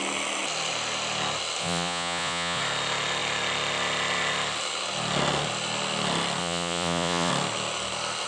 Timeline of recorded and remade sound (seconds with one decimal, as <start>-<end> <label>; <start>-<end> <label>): 0.0-1.6 recorded; 1.6-2.6 remade; 2.6-6.4 recorded; 6.4-7.3 remade; 7.3-8.3 recorded